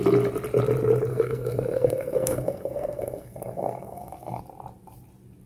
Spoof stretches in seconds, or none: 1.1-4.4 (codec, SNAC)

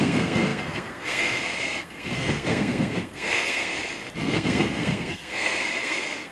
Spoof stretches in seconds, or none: 0.0-3.7 (codec, SNAC); 4.2-6.3

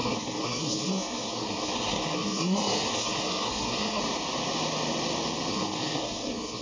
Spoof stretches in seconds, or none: 0.0-4.0 (codec, SNAC); 5.5-6.6

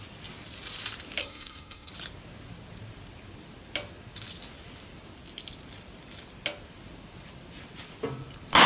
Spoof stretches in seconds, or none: 1.2-1.9 (codec, SNAC)

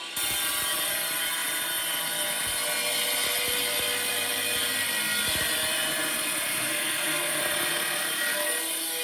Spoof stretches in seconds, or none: 6.5-7.4 (codec, SNAC)

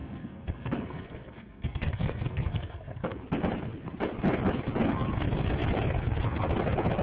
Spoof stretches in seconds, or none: 0.0-3.2 (codec, SNAC)